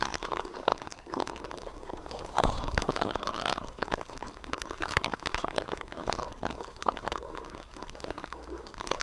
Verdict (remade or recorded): remade